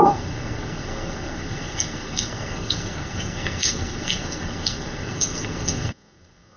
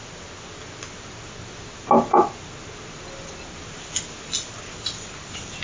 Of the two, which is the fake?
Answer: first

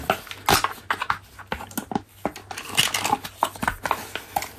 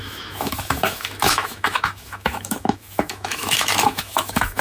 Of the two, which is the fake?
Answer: second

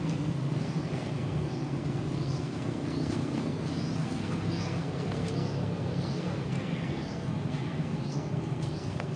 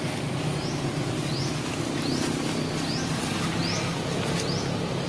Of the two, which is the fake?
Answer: first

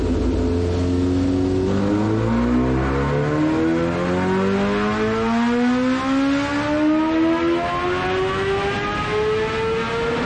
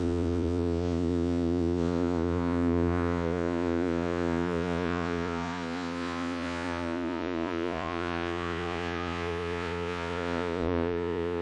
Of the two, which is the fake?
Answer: second